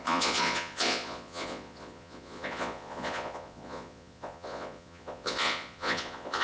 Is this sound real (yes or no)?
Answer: no